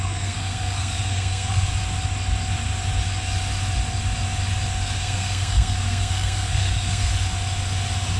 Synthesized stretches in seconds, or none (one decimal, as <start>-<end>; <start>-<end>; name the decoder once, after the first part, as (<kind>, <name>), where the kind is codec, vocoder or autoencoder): 0.0-1.7 (codec, SNAC); 5.0-7.1